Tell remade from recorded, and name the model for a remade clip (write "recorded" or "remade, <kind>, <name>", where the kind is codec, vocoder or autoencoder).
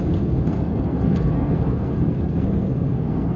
remade, codec, SNAC